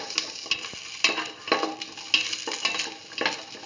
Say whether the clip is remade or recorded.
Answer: recorded